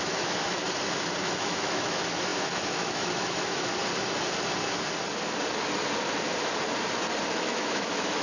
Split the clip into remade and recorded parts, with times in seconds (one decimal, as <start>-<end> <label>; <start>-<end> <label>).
0.0-0.6 remade; 0.6-1.2 recorded; 1.2-3.7 remade; 3.7-7.3 recorded; 7.3-8.2 remade